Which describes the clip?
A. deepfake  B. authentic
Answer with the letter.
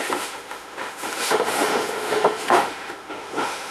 A